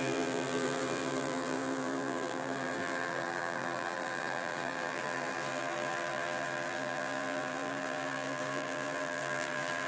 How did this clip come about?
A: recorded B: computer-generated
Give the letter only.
B